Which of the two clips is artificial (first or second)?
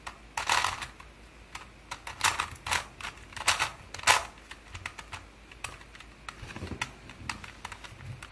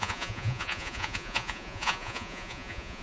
second